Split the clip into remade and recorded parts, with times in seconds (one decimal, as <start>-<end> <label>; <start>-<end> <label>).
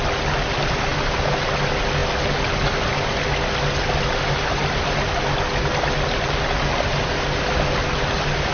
0.0-8.5 recorded